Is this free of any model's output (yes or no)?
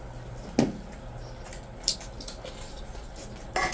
yes